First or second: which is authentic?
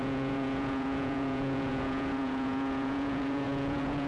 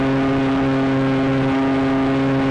second